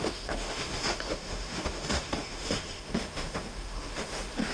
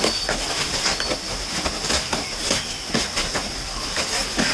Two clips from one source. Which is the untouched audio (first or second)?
second